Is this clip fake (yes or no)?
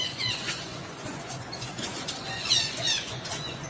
yes